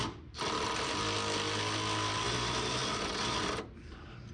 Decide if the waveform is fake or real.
real